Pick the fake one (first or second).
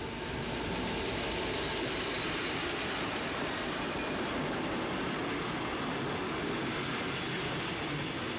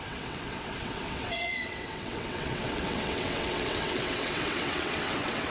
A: second